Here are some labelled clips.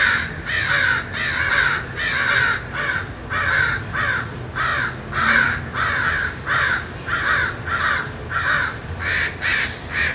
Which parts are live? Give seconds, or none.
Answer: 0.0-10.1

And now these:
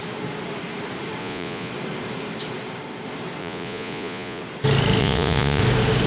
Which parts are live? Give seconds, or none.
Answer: 0.0-1.2; 1.7-3.4; 4.4-5.0; 5.6-6.1

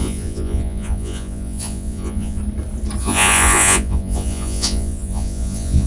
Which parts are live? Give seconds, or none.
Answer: 2.4-3.0

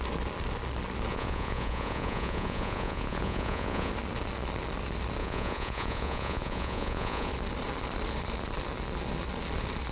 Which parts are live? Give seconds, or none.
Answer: 0.0-1.1; 3.9-5.2; 7.3-9.9

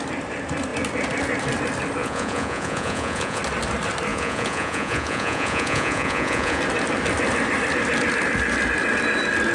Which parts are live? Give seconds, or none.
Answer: 0.0-2.0; 3.4-4.1; 6.6-9.5